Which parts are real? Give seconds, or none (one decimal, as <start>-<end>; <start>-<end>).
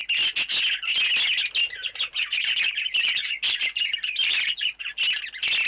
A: 0.0-1.6; 5.0-5.7